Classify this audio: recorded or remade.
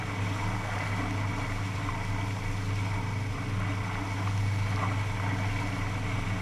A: recorded